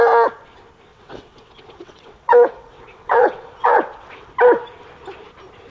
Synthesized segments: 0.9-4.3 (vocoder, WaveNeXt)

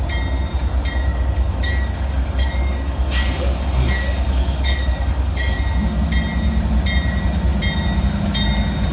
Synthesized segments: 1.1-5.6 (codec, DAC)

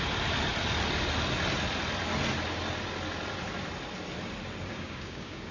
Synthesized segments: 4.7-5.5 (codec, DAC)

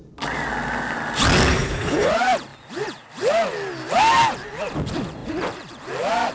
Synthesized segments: 1.5-2.1 (codec, HILCodec)